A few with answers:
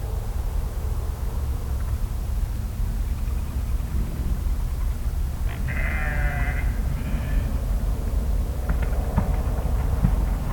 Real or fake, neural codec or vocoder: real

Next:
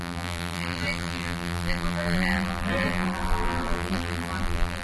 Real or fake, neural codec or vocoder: fake, vocoder, BigVGAN v2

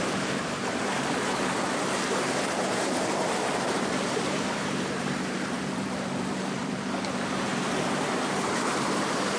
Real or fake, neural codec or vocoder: fake, vocoder, BigVGAN v2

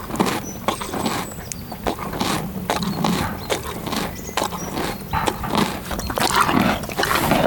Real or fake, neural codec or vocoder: real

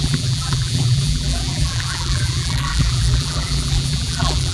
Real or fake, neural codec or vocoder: fake, vocoder, BigVGAN v2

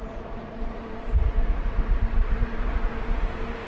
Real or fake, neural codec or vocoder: fake, vocoder, BigVGAN v2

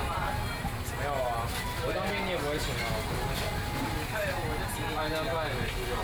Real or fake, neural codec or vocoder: real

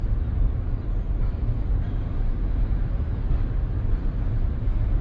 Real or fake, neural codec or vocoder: fake, vocoder, BigVGAN v2